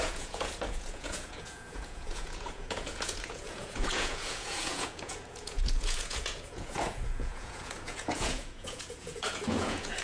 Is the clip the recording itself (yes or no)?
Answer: no